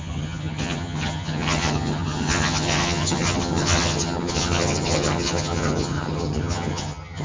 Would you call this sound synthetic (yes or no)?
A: yes